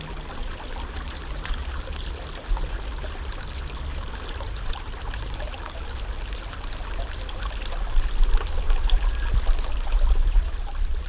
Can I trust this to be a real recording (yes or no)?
yes